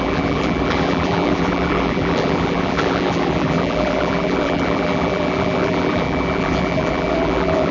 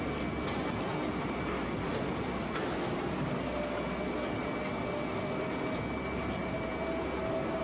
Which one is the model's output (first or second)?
first